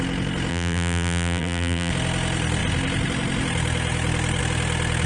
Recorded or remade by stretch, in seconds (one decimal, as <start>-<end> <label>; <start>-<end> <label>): 0.0-0.5 recorded; 0.5-1.9 remade; 1.9-5.1 recorded